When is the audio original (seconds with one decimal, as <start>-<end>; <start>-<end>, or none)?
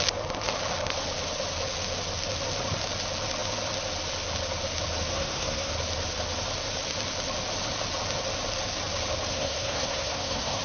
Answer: 0.0-5.1; 5.7-9.3